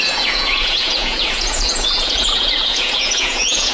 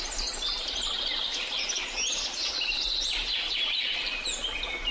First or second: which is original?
second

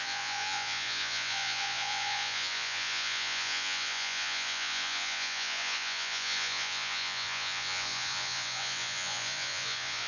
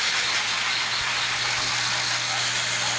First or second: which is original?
second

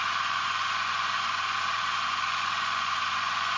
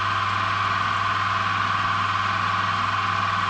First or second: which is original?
second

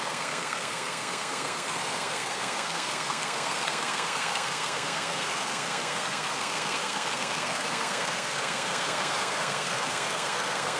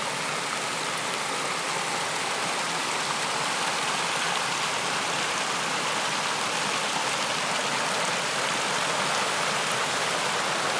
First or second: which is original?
second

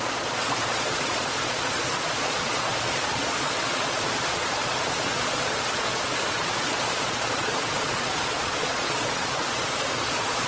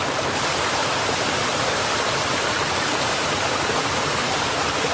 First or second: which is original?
second